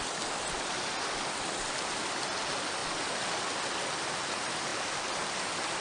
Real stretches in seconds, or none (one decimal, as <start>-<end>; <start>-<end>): 0.0-5.8